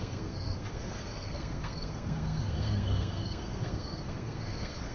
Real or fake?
fake